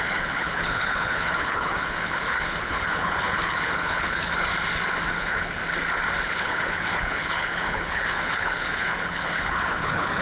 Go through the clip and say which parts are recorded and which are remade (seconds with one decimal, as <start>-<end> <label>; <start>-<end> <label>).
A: 0.0-4.5 remade; 4.5-5.1 recorded; 5.1-5.6 remade; 5.6-6.2 recorded; 6.2-10.2 remade